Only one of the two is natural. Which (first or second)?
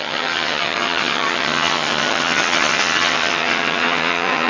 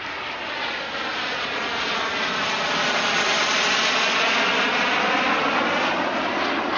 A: second